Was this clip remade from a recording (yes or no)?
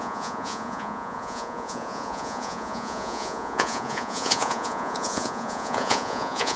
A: yes